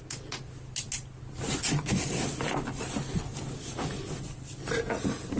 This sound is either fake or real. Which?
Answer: real